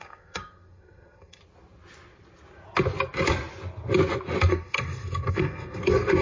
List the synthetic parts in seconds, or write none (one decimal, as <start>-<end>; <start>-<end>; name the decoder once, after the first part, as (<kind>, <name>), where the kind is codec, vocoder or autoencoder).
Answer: 0.0-1.4 (codec, SNAC); 4.5-6.2

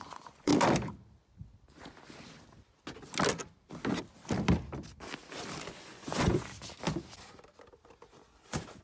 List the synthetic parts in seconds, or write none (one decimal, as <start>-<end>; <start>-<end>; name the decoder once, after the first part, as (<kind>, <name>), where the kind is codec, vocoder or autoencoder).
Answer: 0.0-0.5 (vocoder, Vocos); 5.7-6.5

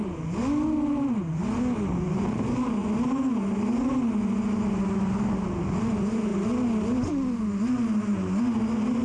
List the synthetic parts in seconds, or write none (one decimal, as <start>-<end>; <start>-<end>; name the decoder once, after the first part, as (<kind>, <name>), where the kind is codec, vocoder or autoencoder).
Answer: none

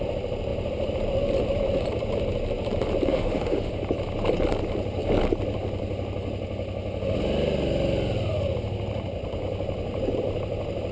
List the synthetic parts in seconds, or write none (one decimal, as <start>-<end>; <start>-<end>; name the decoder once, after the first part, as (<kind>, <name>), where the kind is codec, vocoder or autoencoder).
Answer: 3.1-3.7 (autoencoder, DAC-VAE)

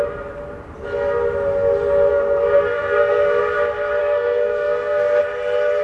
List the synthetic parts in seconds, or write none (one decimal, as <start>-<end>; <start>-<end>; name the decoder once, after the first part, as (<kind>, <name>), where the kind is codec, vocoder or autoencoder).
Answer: 2.1-3.4 (codec, SNAC); 4.0-5.2

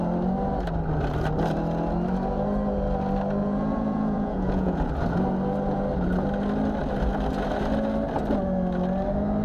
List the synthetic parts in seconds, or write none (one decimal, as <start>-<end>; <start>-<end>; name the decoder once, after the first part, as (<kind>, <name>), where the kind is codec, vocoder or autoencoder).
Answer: 3.4-4.9 (vocoder, Vocos)